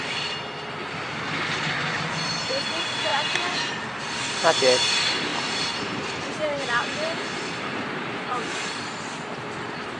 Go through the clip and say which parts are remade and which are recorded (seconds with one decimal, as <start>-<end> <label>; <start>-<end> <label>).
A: 0.0-3.1 recorded; 3.1-4.0 remade; 4.0-5.3 recorded; 5.3-8.8 remade; 8.8-10.0 recorded